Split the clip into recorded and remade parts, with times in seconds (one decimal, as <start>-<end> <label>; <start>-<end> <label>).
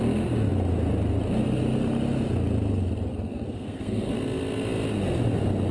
0.0-3.1 recorded; 3.1-4.1 remade; 4.1-5.7 recorded